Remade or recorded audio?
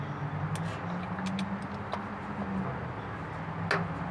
recorded